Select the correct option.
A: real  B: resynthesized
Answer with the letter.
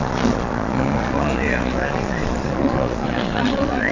B